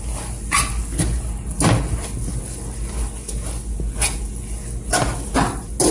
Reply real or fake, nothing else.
real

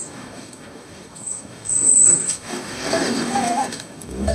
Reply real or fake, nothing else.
fake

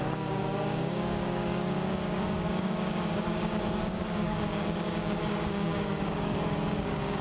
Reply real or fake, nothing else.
fake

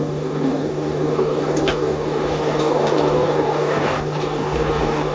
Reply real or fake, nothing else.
fake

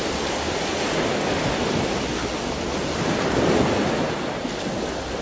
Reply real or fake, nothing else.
real